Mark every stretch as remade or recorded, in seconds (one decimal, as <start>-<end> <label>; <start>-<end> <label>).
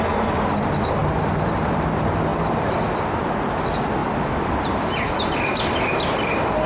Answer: 0.0-4.0 recorded; 4.0-6.7 remade